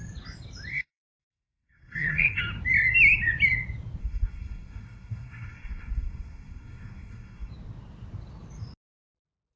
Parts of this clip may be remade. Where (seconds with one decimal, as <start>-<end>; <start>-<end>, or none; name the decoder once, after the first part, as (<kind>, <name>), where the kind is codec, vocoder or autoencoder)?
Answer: 0.7-2.4 (codec, SNAC); 4.0-7.5